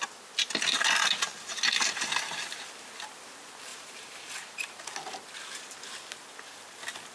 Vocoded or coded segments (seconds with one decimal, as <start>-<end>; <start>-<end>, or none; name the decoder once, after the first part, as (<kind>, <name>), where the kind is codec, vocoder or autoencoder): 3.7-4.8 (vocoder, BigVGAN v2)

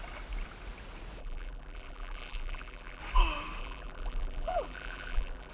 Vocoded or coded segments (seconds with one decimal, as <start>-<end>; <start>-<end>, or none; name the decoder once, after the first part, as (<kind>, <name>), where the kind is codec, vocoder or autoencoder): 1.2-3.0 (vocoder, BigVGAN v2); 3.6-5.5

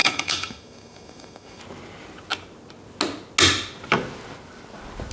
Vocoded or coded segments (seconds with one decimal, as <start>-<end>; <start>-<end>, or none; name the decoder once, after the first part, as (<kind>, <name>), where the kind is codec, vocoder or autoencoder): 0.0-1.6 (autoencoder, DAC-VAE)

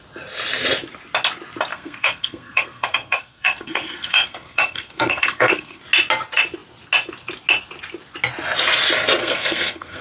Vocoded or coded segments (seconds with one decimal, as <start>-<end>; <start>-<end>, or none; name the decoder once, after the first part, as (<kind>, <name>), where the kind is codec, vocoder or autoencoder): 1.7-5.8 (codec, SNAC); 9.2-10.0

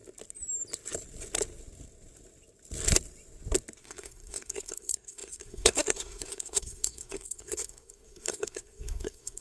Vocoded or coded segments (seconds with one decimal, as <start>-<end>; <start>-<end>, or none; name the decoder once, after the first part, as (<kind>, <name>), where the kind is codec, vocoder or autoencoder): 3.8-9.4 (codec, SNAC)

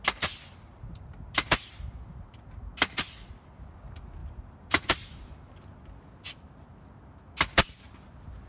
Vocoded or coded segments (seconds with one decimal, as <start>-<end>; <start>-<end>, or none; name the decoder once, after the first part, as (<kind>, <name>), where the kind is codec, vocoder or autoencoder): 0.7-1.8 (vocoder, BigVGAN v2); 4.2-5.5

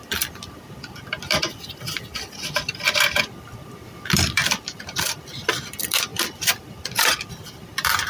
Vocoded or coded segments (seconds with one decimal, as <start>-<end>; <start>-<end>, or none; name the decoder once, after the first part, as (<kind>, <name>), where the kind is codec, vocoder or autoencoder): 0.0-8.1 (vocoder, BigVGAN v2)